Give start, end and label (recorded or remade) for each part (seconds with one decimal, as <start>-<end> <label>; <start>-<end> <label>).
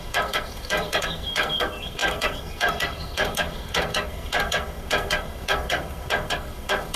0.0-7.0 remade